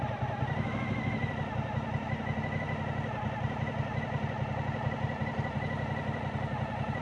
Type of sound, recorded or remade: recorded